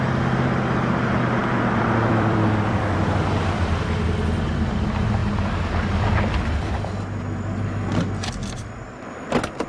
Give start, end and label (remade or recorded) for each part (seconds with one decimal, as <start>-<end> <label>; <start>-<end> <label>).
0.0-1.4 recorded; 1.4-4.0 remade; 4.0-8.4 recorded; 8.4-9.7 remade